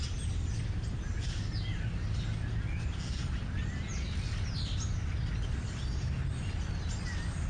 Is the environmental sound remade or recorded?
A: recorded